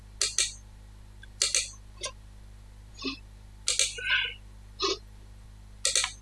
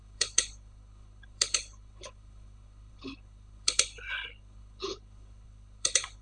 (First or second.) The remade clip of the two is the second